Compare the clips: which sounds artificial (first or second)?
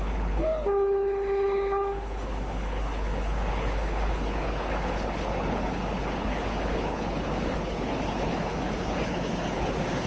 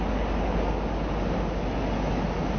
first